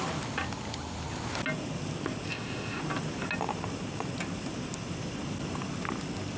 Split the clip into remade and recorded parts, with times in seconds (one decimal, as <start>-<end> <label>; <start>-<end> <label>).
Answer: 0.0-2.3 recorded; 2.3-2.8 remade; 2.8-6.4 recorded